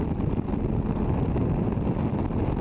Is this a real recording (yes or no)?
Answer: yes